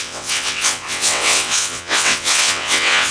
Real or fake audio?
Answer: fake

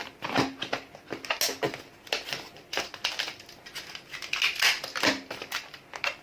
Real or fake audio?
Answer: real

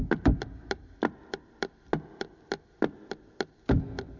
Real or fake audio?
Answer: real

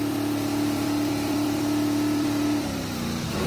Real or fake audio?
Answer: fake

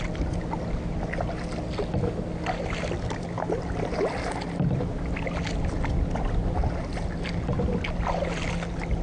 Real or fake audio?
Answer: real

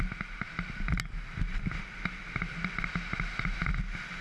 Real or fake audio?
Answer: real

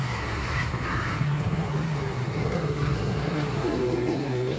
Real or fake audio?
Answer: fake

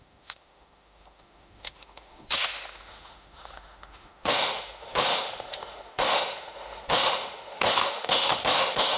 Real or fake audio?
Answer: fake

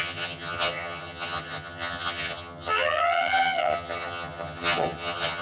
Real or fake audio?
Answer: fake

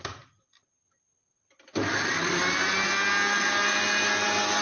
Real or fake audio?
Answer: real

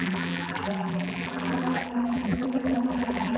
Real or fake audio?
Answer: fake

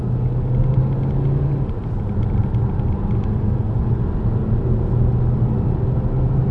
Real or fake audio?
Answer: real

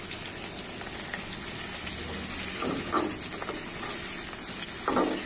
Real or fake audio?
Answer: real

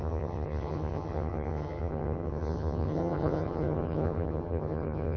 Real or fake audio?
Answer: fake